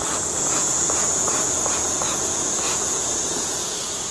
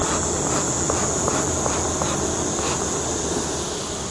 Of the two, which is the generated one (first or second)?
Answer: first